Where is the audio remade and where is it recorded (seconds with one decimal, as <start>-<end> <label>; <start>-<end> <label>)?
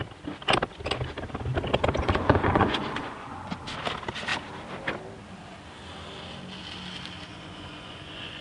0.0-2.0 recorded; 2.0-3.5 remade; 3.5-7.3 recorded; 7.3-8.4 remade